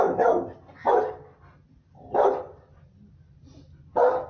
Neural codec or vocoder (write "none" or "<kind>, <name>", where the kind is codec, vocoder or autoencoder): none